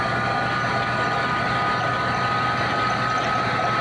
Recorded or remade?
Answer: recorded